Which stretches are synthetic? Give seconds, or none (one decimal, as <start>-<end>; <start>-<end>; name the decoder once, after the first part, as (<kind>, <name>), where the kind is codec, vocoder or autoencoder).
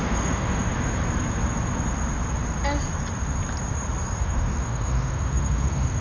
0.0-0.7 (autoencoder, DAC-VAE); 4.2-6.0